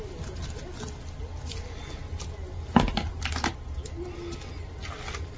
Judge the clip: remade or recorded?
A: recorded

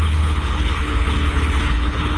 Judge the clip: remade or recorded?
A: remade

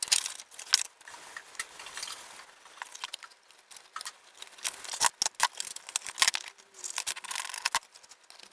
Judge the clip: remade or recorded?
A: recorded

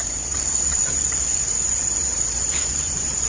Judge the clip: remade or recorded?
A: remade